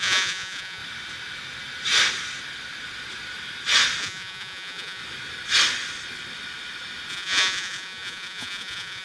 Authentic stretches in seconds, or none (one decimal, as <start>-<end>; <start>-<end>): 0.8-4.0; 5.0-7.1